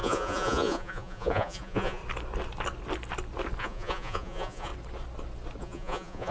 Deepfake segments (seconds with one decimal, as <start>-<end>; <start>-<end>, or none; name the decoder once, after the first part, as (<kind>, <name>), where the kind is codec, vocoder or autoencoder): 0.0-2.0 (vocoder, Vocos); 3.6-4.7; 5.6-6.3